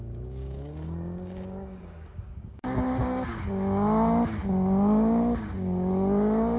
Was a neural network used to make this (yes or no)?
yes